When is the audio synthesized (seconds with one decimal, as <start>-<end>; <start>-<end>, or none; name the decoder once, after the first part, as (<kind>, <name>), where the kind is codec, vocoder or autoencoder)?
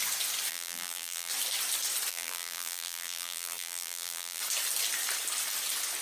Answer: 0.5-1.3 (vocoder, BigVGAN v2); 2.1-4.4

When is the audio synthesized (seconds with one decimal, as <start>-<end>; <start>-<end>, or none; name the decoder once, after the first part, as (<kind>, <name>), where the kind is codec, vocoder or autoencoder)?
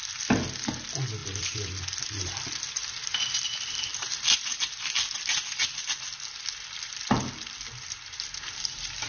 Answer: 0.0-3.9 (vocoder, BigVGAN v2); 6.4-9.1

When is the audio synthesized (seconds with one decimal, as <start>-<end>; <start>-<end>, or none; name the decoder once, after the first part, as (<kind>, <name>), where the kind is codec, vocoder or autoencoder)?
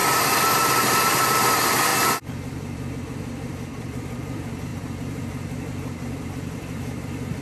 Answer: 1.2-7.4 (vocoder, BigVGAN v2)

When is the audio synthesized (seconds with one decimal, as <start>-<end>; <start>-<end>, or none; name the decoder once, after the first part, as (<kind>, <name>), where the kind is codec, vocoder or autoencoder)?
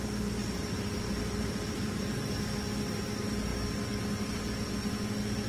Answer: 0.4-2.4 (vocoder, BigVGAN v2)